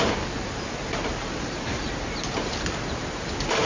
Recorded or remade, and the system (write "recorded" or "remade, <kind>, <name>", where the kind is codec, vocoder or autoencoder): recorded